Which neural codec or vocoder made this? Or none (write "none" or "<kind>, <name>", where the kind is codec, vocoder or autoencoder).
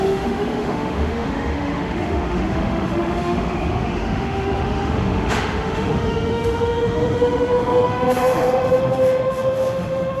autoencoder, DAC-VAE